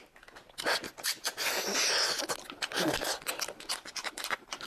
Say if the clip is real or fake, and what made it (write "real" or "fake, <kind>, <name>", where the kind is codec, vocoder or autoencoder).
real